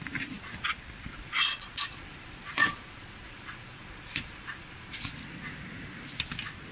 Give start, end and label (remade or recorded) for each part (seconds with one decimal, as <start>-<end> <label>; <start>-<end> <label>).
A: 0.0-1.1 recorded; 1.1-5.1 remade; 5.1-6.7 recorded